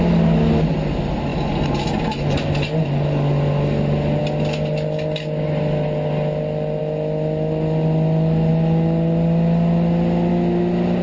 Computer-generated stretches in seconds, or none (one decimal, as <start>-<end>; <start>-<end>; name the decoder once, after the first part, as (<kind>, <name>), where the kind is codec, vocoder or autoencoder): none